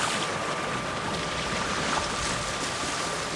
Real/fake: fake